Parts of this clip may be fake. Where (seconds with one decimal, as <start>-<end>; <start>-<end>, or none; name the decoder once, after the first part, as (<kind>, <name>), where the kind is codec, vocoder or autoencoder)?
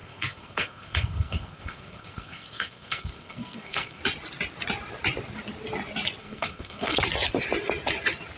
0.0-4.0 (codec, SNAC); 6.2-7.0